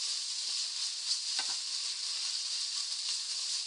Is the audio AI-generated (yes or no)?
no